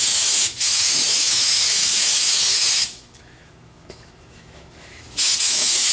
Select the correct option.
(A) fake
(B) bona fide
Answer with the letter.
A